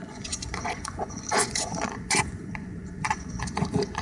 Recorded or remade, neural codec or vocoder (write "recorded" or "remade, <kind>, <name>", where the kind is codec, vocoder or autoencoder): remade, vocoder, Vocos